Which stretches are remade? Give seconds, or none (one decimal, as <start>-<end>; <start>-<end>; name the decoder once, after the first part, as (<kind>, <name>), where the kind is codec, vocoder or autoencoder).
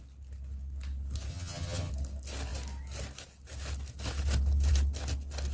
1.3-1.9 (vocoder, HiFi-GAN)